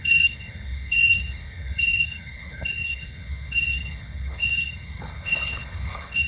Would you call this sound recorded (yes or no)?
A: no